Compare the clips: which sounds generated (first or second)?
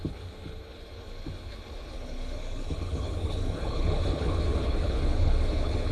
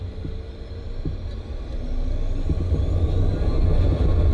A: first